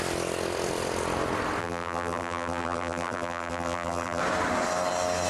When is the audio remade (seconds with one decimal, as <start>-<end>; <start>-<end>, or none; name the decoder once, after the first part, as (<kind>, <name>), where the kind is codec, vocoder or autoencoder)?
1.6-4.2 (vocoder, BigVGAN v2)